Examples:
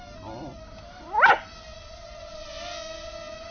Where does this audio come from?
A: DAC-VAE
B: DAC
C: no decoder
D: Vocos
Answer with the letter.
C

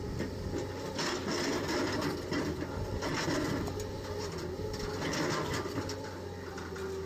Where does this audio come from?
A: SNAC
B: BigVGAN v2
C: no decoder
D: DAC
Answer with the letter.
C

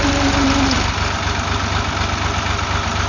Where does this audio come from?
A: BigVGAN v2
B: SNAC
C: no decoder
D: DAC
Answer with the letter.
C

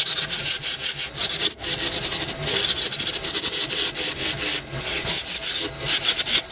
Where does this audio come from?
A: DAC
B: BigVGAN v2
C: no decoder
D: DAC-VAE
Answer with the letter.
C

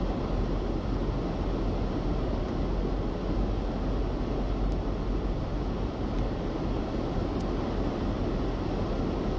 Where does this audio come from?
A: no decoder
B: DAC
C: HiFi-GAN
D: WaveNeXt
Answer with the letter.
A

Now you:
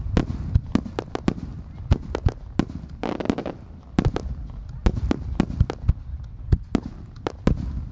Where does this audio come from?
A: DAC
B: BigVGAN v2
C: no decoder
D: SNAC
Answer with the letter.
C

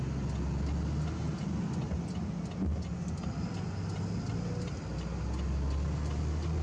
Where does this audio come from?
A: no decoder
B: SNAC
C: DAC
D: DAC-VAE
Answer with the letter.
A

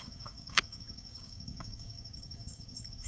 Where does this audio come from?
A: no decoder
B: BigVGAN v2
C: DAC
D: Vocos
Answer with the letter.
C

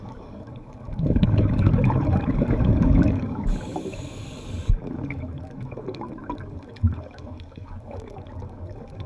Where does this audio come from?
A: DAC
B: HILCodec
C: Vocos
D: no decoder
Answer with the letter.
A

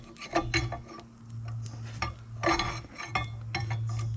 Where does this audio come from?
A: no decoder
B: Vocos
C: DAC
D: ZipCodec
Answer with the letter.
A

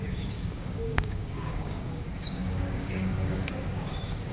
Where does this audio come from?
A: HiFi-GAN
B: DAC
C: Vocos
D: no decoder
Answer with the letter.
B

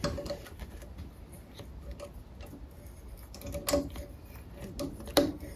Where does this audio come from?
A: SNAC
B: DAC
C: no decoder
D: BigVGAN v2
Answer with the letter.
C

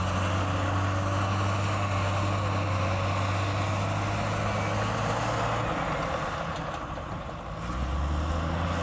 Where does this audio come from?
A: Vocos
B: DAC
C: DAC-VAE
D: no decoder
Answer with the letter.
D